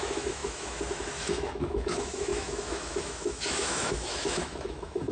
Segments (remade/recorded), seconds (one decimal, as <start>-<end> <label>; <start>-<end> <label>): 0.0-5.1 remade